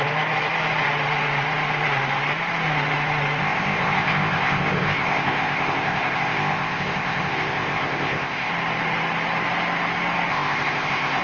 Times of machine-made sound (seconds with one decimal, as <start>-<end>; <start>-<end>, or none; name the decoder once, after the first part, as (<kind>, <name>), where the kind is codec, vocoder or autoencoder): 3.4-8.5 (codec, ZipCodec); 10.3-11.2